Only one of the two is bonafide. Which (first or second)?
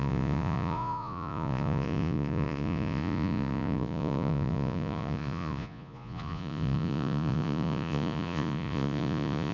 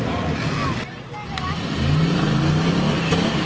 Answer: second